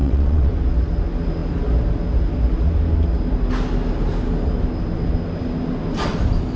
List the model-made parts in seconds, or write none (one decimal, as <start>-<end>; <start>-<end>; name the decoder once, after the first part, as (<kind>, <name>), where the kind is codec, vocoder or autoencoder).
0.0-0.5 (vocoder, WaveNeXt)